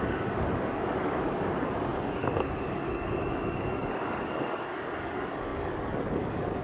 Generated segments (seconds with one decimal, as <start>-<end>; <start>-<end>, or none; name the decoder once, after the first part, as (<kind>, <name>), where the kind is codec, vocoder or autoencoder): 0.0-6.6 (codec, DAC)